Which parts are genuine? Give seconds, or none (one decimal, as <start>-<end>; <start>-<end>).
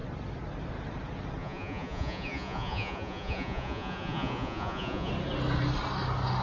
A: 0.0-1.4; 5.1-6.4